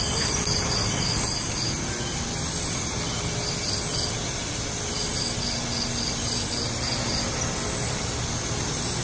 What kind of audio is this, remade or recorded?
recorded